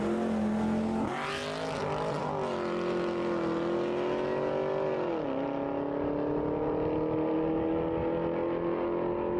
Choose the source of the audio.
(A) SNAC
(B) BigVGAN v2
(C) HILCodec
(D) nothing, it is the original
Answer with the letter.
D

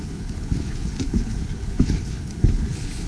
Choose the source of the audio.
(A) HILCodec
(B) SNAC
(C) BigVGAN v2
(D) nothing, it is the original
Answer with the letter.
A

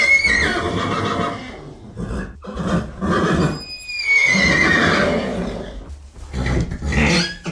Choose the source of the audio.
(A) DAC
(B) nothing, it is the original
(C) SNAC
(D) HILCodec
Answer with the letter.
B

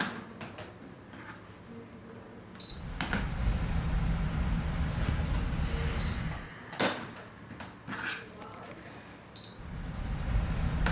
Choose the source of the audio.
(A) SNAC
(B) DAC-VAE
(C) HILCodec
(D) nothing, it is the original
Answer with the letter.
D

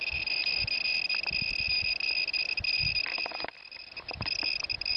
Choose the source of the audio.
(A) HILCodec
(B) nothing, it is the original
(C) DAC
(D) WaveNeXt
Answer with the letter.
B